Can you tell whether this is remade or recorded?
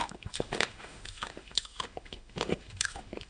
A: remade